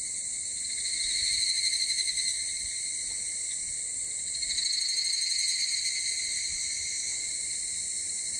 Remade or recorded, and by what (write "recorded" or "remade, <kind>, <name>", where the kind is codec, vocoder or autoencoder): recorded